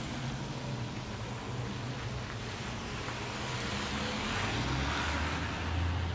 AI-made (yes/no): no